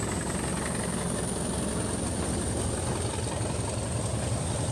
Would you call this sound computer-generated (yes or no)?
no